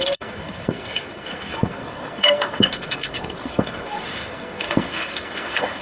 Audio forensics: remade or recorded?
remade